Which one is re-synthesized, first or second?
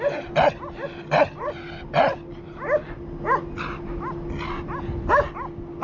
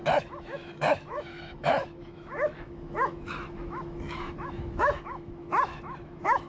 second